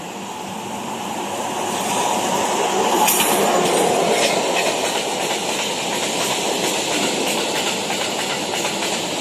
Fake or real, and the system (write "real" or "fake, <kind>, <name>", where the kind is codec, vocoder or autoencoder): real